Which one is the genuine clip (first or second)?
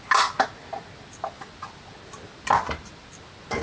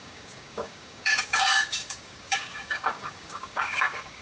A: first